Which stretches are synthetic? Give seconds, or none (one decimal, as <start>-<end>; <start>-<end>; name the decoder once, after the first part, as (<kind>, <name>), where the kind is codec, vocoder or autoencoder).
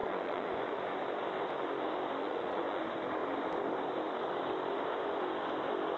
0.0-0.8 (vocoder, Vocos); 2.2-2.8